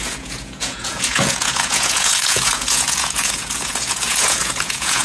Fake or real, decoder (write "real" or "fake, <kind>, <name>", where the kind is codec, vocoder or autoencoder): fake, vocoder, Vocos